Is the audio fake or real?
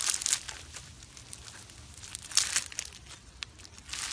real